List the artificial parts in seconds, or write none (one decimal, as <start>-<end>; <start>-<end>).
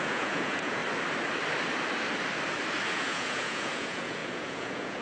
0.0-0.8; 2.9-5.0